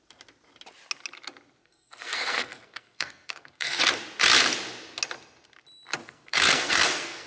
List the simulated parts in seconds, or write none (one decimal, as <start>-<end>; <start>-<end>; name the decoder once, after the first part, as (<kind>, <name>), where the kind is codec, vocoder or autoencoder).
1.6-3.8 (codec, SNAC); 6.0-7.3